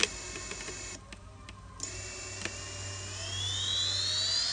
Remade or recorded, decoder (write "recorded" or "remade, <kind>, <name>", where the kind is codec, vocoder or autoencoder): recorded